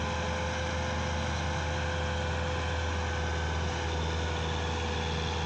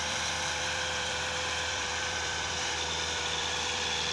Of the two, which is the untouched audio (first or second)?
first